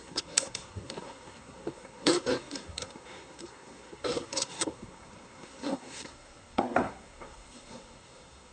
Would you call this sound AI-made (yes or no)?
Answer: yes